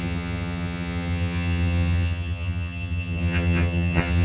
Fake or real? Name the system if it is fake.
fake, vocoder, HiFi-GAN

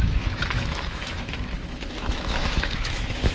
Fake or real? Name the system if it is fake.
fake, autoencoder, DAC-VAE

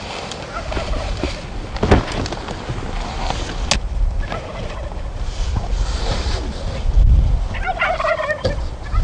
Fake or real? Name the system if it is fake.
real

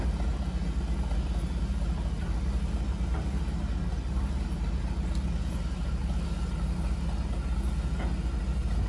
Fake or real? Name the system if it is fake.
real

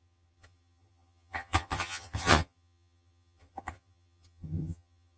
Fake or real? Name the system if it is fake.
fake, vocoder, HiFi-GAN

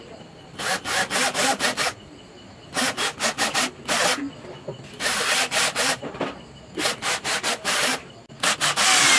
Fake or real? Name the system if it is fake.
real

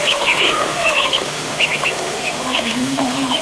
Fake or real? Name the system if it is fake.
fake, autoencoder, DAC-VAE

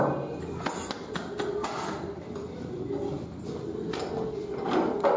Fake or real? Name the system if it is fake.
real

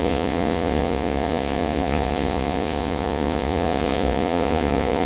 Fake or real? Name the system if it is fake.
fake, vocoder, Vocos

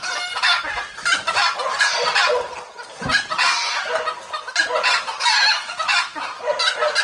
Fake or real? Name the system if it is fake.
real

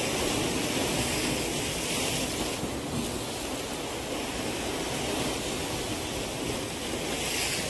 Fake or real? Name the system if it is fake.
real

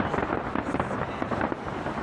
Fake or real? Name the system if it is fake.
fake, vocoder, BigVGAN v2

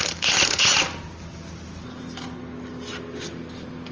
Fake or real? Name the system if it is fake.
real